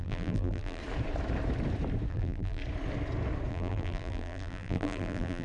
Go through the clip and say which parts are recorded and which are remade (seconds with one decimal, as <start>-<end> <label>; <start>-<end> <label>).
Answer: 0.0-0.8 remade; 0.8-2.1 recorded; 2.1-2.6 remade; 2.6-3.5 recorded; 3.5-5.4 remade